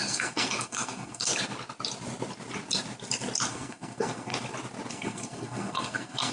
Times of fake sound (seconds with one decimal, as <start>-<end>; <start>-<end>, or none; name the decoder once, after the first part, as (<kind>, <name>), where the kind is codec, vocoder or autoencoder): 0.0-1.3 (codec, SNAC); 3.5-4.3; 4.9-6.3